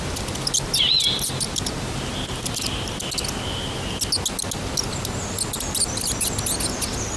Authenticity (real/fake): real